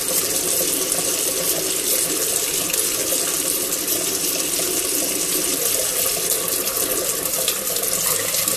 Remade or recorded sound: recorded